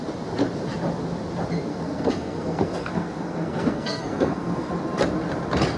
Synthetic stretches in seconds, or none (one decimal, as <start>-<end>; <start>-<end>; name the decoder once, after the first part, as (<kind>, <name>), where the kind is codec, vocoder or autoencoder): 1.7-4.7 (codec, SNAC)